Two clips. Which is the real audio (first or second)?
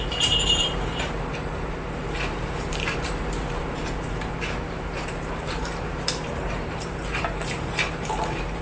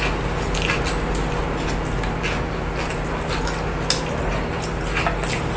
second